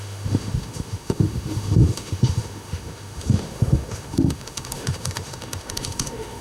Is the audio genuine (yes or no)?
no